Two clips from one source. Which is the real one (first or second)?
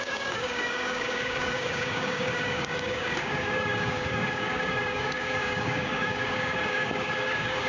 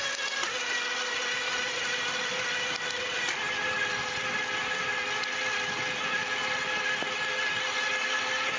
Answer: second